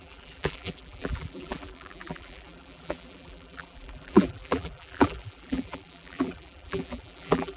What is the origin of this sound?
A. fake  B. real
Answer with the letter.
A